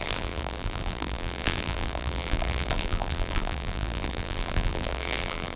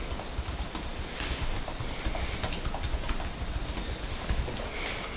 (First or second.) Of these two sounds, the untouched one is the second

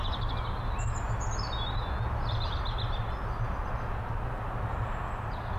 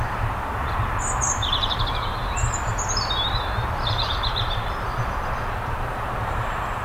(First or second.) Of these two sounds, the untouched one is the first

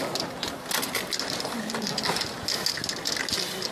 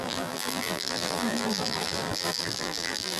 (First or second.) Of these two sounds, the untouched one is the first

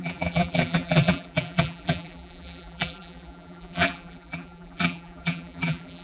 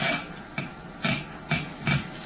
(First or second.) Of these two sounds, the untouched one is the second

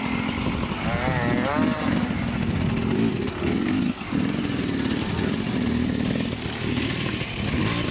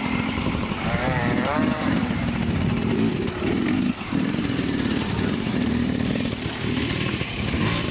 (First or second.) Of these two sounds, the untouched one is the first